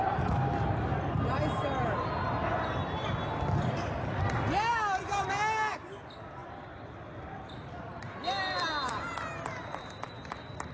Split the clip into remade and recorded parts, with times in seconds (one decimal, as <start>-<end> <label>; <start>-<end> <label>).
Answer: 0.0-10.7 recorded